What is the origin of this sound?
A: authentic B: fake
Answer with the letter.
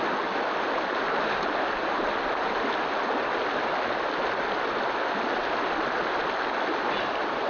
A